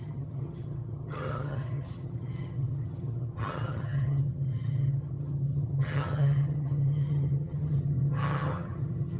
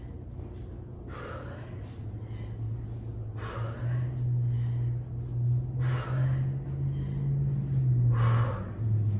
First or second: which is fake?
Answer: first